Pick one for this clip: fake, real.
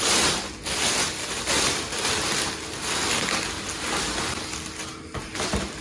real